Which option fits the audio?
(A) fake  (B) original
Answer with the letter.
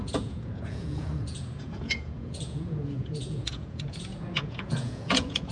A